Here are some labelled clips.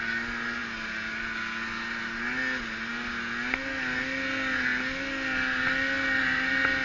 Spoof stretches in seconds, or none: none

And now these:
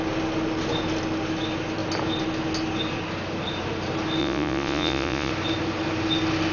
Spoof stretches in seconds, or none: 4.2-5.3 (vocoder, Vocos)

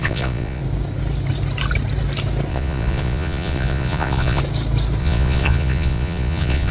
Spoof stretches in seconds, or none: 0.0-0.6 (vocoder, Vocos); 2.5-4.4; 5.0-6.7

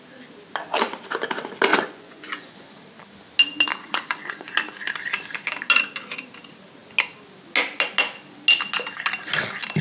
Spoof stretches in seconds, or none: 1.7-2.8 (vocoder, Vocos); 3.7-4.5

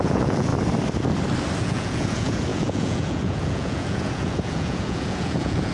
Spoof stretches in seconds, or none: 0.0-0.5 (vocoder, Vocos); 1.6-5.7

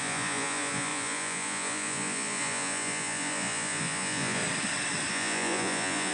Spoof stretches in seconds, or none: 0.0-4.4 (vocoder, Vocos); 5.1-6.1